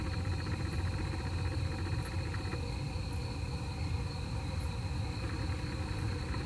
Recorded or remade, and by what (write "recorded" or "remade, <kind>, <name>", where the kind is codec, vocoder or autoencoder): recorded